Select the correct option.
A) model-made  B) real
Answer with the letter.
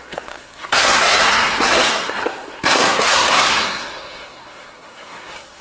A